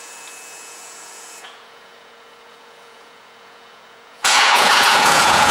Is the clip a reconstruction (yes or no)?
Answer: yes